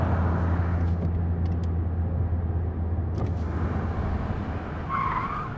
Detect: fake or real real